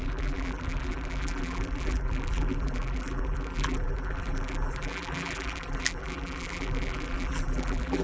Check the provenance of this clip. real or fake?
fake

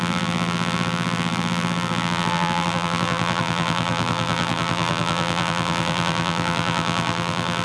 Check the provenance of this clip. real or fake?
fake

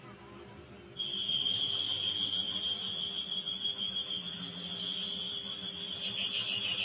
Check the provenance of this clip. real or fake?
real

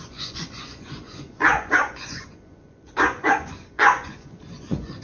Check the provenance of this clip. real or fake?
fake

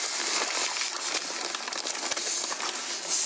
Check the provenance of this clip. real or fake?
real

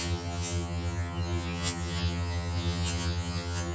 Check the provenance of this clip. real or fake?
fake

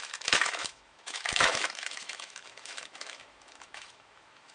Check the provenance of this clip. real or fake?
fake